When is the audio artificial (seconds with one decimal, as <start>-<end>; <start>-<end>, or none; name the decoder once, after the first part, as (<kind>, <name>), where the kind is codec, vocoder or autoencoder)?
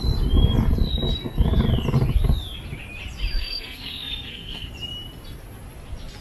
3.4-4.7 (codec, SNAC)